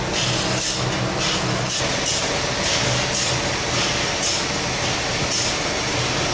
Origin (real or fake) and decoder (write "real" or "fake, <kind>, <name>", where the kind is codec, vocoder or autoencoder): real